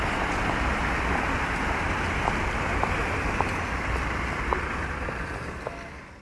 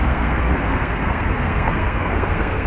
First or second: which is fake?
second